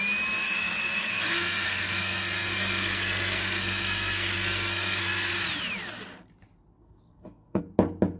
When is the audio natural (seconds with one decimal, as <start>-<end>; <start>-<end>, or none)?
0.0-0.4; 5.3-6.8; 7.6-8.2